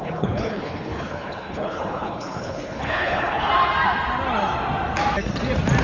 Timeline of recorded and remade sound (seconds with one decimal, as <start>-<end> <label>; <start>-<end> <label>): 0.0-3.5 remade; 3.5-5.8 recorded